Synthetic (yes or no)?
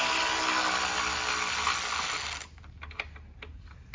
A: no